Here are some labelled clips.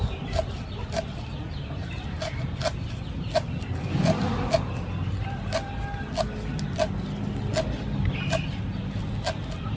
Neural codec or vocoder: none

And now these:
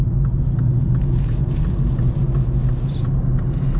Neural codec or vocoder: none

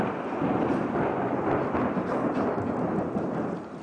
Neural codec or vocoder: none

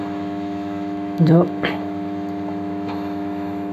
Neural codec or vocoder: autoencoder, DAC-VAE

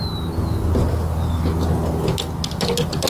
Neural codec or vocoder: none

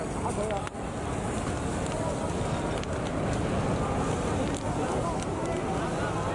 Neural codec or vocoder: none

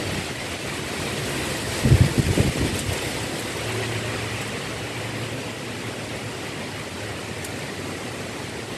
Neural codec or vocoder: none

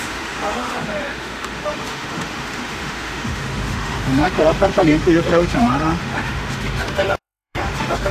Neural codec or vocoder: autoencoder, DAC-VAE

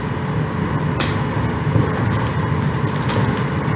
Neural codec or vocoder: none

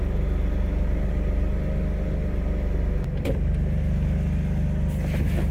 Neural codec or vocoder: none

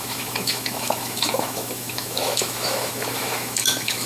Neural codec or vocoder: autoencoder, DAC-VAE